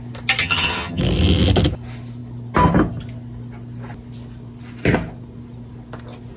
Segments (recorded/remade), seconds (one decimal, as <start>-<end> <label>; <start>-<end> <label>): 0.0-0.4 recorded; 0.4-1.0 remade; 1.0-6.4 recorded